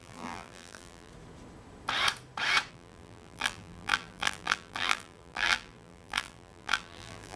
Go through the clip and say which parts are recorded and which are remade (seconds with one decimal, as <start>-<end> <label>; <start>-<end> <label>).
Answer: 0.0-1.1 remade; 1.1-2.7 recorded; 2.7-7.4 remade